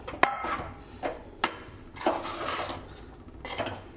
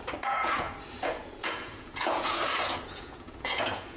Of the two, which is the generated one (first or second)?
second